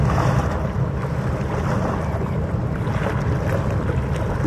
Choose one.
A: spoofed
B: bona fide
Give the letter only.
B